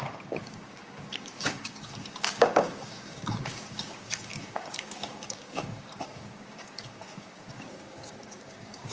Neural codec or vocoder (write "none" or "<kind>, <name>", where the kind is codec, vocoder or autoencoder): codec, DAC